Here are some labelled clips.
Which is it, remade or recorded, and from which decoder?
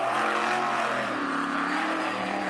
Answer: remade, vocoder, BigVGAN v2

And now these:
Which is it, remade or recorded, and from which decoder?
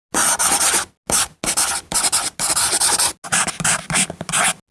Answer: recorded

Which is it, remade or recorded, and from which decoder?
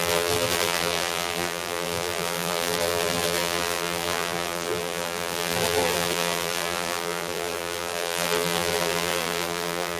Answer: remade, vocoder, BigVGAN v2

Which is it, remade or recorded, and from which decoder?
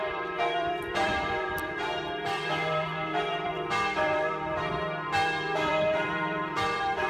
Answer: remade, vocoder, BigVGAN v2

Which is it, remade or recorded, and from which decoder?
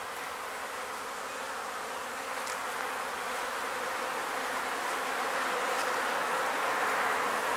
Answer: recorded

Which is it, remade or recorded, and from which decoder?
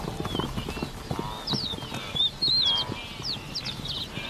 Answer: recorded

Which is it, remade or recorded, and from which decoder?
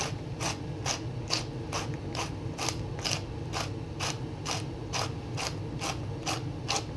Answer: recorded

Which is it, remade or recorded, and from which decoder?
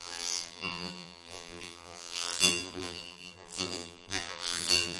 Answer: remade, vocoder, BigVGAN v2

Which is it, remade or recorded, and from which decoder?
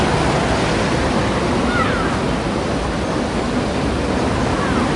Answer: recorded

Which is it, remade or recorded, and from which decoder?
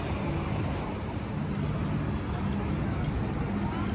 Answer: recorded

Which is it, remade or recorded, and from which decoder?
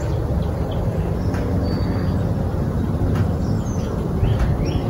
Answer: recorded